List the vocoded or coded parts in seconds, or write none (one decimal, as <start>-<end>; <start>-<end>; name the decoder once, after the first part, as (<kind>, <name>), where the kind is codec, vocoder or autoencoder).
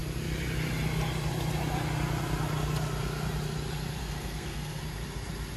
4.0-4.8 (codec, SNAC)